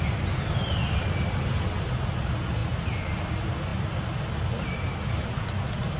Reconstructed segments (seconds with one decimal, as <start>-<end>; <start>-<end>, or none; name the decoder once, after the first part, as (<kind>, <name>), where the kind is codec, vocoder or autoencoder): none